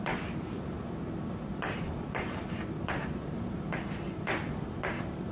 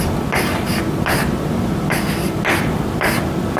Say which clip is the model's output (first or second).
first